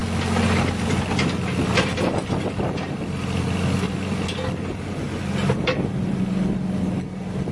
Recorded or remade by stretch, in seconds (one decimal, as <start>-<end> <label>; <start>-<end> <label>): 0.0-7.5 recorded